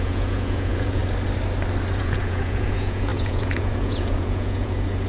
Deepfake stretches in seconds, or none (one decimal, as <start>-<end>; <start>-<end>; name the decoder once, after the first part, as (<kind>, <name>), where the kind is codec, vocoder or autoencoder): 0.0-1.0 (vocoder, Vocos); 2.0-5.1